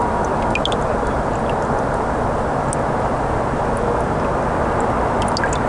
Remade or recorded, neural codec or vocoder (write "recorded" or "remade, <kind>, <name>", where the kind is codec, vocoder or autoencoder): recorded